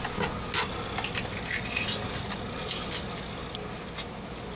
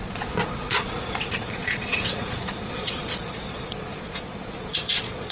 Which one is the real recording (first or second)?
first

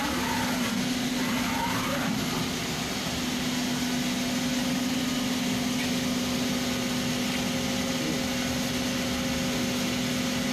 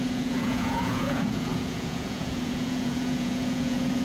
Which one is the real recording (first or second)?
first